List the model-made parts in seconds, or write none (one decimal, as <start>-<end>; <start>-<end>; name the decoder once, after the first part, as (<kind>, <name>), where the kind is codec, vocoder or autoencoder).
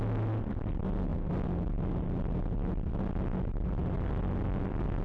none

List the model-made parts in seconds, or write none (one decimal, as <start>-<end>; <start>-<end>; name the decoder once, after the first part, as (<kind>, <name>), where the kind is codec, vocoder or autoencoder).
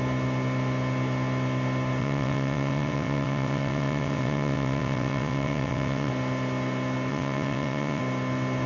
2.0-6.1 (vocoder, WaveNeXt); 7.1-8.0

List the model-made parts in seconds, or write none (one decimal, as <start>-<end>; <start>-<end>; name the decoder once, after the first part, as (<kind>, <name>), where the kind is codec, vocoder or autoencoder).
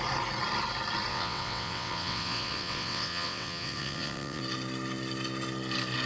1.1-4.4 (vocoder, WaveNeXt)